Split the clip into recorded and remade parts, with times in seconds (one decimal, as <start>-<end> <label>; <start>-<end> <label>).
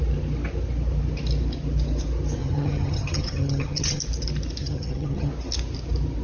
0.0-2.4 recorded; 2.4-4.0 remade; 4.0-4.6 recorded; 4.6-5.3 remade; 5.3-6.2 recorded